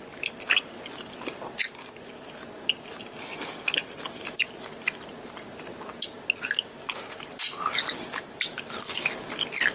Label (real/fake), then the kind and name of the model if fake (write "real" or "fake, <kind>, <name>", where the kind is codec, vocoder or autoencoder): real